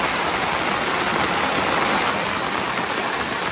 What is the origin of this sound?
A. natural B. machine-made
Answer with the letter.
A